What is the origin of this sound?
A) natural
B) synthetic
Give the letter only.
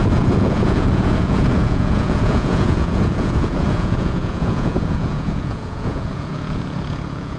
B